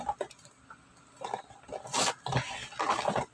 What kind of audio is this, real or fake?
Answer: real